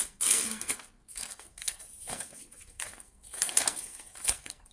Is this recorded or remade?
remade